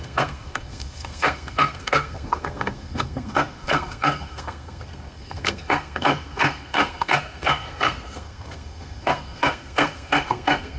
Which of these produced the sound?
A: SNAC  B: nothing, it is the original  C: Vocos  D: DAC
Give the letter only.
A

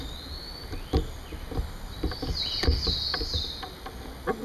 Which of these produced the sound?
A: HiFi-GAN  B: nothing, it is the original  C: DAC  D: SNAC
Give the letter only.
B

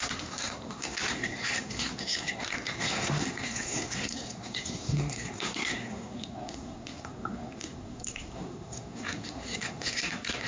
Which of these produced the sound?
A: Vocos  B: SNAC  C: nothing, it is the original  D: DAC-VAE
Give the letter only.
B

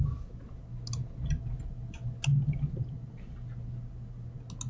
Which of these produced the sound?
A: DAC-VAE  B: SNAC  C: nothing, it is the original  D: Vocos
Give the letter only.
C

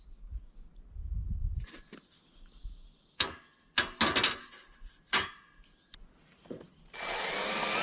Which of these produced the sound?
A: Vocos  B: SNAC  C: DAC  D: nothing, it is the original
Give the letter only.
D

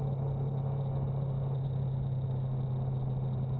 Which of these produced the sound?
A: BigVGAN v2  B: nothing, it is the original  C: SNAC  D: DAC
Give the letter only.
B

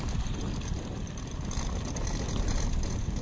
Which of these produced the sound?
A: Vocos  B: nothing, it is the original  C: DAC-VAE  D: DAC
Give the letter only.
B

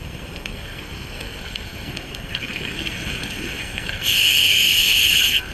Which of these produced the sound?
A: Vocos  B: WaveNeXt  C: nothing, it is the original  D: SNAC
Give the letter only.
D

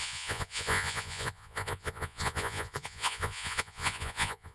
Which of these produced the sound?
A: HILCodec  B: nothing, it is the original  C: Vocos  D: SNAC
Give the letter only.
C